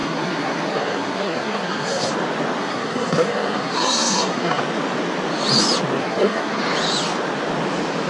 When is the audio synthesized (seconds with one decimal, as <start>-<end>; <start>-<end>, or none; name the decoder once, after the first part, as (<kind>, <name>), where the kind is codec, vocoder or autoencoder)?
0.0-2.1 (codec, SNAC); 2.6-4.6; 6.0-6.6